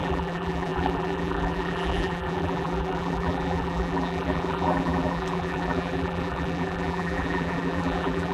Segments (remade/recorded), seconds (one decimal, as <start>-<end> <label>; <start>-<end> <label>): 0.0-8.3 remade